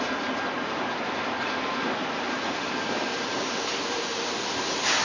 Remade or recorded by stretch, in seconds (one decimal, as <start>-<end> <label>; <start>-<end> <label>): 0.0-2.0 recorded; 2.0-4.3 remade; 4.3-5.0 recorded